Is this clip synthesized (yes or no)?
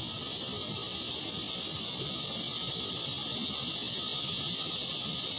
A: no